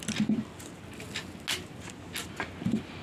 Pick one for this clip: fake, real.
real